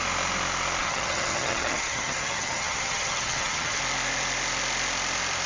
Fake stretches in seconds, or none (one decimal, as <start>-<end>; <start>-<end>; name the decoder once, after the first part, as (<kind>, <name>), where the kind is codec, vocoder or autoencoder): 0.8-3.8 (vocoder, HiFi-GAN)